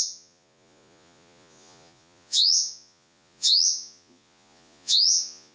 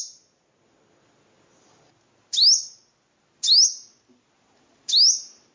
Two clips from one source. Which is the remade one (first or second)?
first